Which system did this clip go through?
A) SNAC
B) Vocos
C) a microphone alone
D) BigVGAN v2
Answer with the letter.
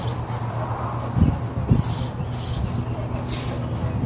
C